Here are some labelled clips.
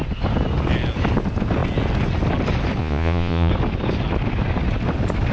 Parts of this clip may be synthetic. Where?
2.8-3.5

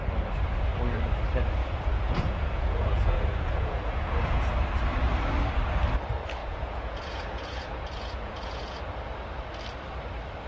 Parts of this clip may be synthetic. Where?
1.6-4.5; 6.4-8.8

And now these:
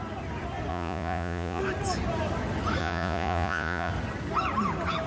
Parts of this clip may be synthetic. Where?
0.7-1.6; 2.8-3.9

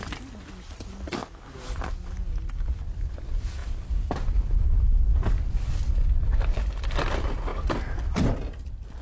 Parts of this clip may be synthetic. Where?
none

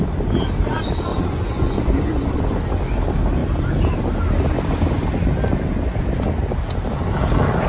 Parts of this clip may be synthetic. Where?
1.1-2.4

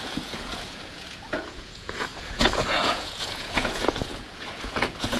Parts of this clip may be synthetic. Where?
0.0-5.2